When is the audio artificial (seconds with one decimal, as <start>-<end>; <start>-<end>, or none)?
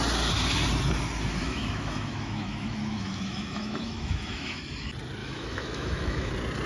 1.4-4.6; 5.2-6.3